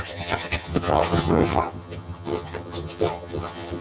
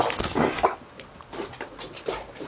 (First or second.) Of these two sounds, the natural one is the second